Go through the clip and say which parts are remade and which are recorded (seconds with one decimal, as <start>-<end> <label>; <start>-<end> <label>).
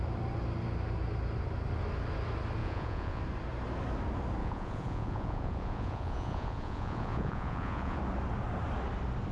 0.0-2.6 recorded; 2.6-3.2 remade; 3.2-4.4 recorded; 4.4-8.0 remade; 8.0-9.3 recorded